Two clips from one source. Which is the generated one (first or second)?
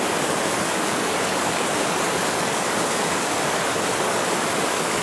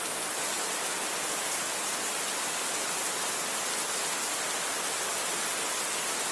first